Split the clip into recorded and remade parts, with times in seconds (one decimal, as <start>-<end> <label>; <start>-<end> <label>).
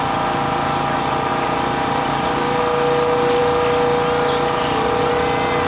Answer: 0.0-1.3 recorded; 1.3-2.6 remade; 2.6-5.7 recorded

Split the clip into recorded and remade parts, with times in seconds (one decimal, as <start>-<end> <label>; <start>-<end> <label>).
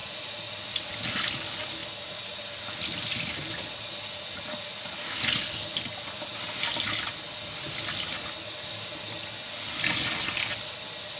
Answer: 0.0-0.8 remade; 0.8-11.2 recorded